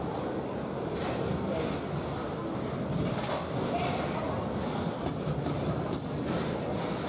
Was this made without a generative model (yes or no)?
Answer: yes